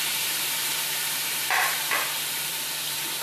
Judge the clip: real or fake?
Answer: fake